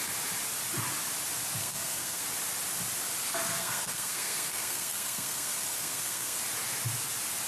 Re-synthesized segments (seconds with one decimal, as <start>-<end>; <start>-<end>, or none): 1.6-2.2; 3.6-6.4